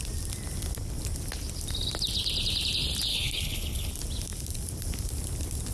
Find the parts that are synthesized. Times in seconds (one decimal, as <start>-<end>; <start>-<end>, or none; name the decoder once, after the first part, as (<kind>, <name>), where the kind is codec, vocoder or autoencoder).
3.1-3.9 (codec, HILCodec)